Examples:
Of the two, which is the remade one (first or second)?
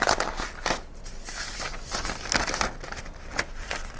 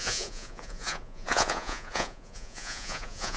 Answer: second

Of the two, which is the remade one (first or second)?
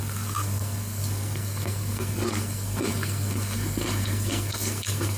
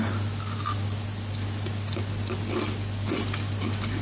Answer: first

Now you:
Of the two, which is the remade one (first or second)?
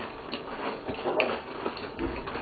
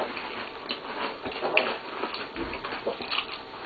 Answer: first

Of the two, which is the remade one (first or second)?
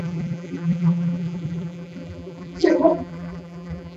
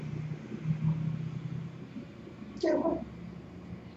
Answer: first